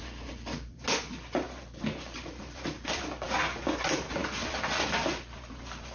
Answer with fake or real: real